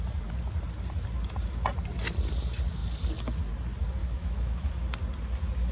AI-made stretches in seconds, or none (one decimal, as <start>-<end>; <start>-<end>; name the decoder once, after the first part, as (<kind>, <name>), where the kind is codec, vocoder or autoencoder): 4.0-4.7 (autoencoder, DAC-VAE)